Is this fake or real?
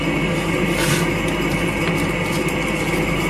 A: real